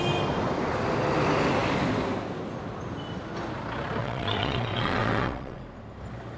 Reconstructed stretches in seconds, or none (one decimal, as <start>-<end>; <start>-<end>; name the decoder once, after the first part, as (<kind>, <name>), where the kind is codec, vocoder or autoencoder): 4.0-5.6 (vocoder, WaveNeXt)